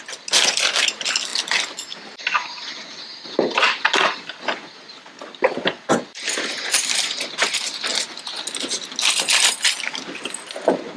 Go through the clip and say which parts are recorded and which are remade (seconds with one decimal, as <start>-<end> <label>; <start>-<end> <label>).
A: 0.0-11.0 recorded